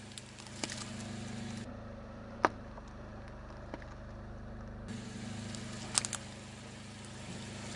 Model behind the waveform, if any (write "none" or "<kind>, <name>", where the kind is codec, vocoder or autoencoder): none